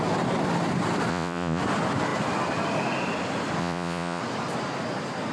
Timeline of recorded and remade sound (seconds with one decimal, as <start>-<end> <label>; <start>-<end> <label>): 0.0-1.1 recorded; 1.1-1.6 remade; 1.6-3.6 recorded; 3.6-4.2 remade; 4.2-5.3 recorded